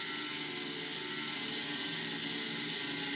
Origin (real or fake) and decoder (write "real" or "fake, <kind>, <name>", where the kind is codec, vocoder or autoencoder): real